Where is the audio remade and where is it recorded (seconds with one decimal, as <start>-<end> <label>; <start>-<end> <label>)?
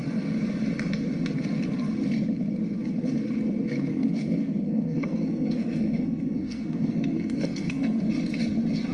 0.0-3.9 recorded; 3.9-8.1 remade; 8.1-8.9 recorded